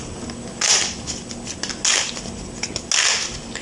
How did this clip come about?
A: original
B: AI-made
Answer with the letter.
A